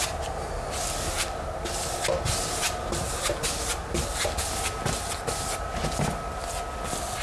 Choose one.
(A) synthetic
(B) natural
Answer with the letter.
B